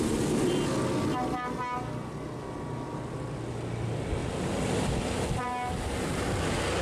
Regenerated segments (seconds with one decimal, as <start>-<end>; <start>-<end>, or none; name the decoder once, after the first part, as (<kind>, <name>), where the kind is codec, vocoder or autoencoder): none